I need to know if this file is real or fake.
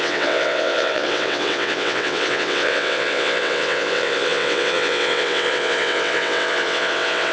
fake